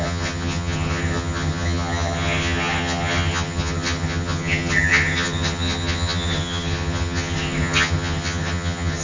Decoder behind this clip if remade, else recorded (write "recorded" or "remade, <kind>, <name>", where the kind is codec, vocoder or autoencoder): remade, vocoder, HiFi-GAN